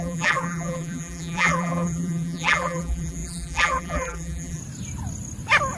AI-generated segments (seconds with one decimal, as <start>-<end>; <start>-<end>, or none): 0.0-4.6